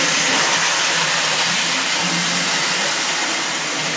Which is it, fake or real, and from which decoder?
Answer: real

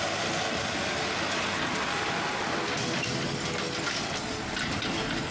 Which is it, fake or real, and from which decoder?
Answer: real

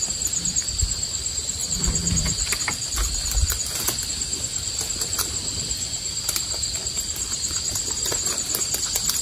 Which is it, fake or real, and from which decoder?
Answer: fake, vocoder, BigVGAN v2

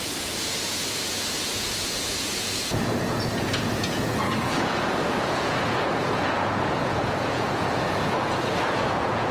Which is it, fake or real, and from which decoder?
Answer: fake, vocoder, Vocos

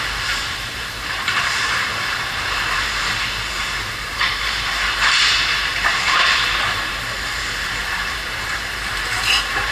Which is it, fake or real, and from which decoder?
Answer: fake, vocoder, BigVGAN v2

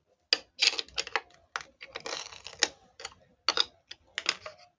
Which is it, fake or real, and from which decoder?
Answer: real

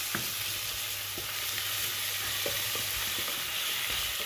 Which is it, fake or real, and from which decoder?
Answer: real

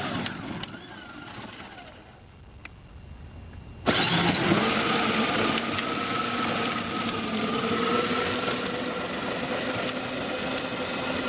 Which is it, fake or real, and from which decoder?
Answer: real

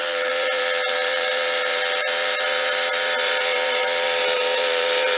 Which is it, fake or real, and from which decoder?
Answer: fake, vocoder, BigVGAN v2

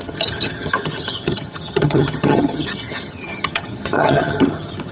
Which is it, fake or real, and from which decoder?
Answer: fake, vocoder, HiFi-GAN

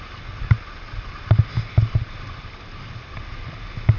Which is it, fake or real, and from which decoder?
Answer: real